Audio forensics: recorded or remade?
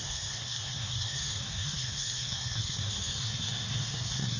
remade